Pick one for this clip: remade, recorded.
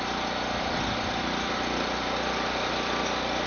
recorded